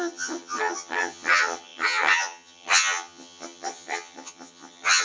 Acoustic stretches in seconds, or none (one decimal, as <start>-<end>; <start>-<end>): none